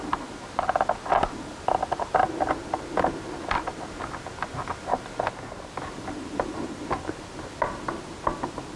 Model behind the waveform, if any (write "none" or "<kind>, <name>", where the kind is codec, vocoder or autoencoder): none